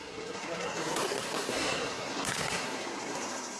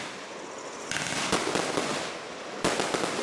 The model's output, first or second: first